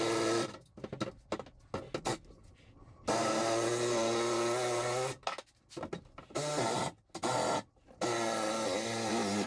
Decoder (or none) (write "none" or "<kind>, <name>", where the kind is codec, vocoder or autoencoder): none